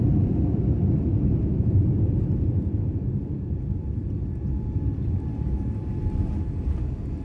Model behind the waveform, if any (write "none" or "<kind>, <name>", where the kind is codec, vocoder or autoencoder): vocoder, BigVGAN v2